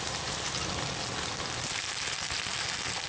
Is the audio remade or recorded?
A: recorded